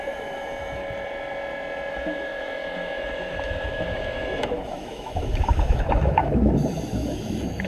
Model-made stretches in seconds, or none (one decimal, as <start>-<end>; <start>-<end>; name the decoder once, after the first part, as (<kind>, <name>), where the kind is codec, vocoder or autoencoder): 0.0-0.8 (autoencoder, DAC-VAE); 1.9-7.7